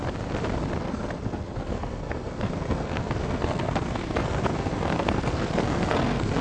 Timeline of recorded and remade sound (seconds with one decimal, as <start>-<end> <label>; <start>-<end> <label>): 0.0-0.8 recorded; 0.8-6.4 remade